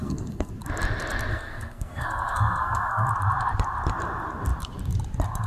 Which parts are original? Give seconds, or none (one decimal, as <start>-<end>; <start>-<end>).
0.5-1.3; 3.1-5.5